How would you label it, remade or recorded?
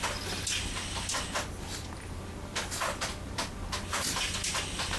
recorded